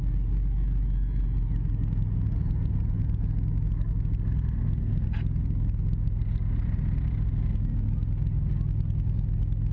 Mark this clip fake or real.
real